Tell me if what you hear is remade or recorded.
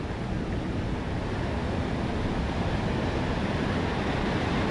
recorded